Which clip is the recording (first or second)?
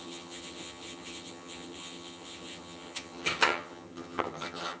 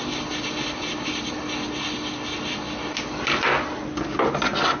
second